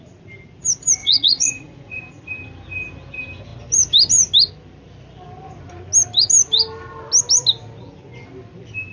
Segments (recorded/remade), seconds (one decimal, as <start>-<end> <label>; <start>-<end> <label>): 0.0-1.0 recorded; 1.0-2.0 remade; 2.0-8.9 recorded